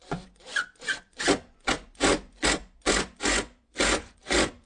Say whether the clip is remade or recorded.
remade